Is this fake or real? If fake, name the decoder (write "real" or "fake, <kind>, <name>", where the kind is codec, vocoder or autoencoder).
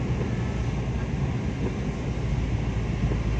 real